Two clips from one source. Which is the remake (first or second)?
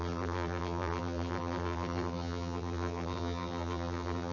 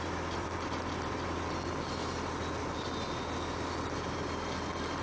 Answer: first